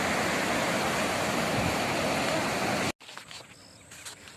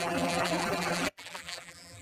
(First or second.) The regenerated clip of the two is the second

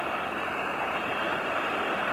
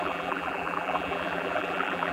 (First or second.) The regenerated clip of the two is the second